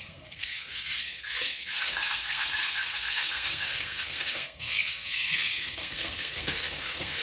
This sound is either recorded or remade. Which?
remade